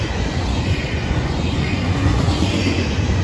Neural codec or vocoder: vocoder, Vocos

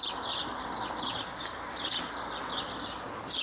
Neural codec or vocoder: none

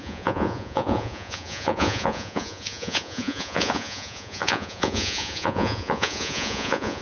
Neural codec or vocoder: vocoder, Vocos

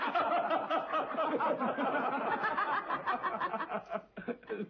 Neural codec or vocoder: none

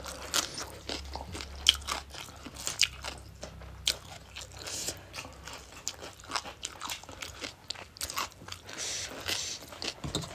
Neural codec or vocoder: none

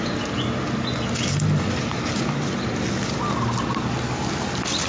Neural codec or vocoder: none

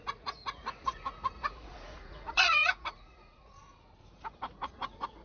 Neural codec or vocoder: vocoder, Vocos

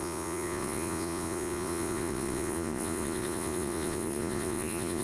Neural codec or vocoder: vocoder, Vocos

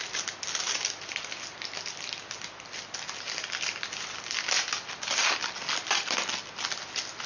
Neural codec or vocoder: none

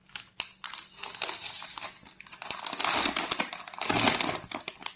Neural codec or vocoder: none